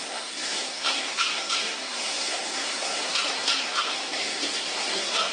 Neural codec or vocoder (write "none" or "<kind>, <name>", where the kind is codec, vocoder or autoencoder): codec, SNAC